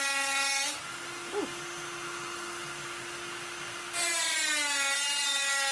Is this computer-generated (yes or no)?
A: no